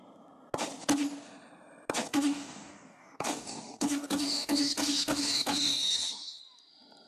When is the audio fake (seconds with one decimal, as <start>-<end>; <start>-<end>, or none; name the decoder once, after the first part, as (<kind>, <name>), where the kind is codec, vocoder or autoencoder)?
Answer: 2.1-6.4 (codec, DAC)